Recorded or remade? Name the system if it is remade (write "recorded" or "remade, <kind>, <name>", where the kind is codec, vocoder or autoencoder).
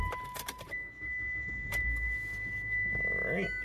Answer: remade, vocoder, BigVGAN v2